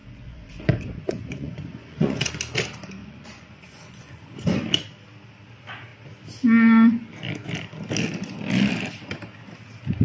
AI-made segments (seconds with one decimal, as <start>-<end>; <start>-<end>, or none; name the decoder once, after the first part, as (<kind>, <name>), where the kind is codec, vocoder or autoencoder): 0.0-2.3 (vocoder, Vocos); 3.0-4.6